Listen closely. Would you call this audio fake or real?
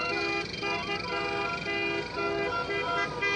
real